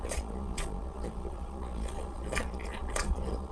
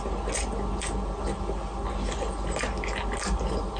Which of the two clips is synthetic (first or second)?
first